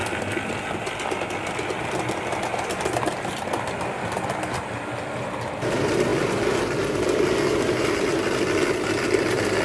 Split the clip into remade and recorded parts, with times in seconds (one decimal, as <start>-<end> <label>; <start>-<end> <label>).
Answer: 0.0-9.6 recorded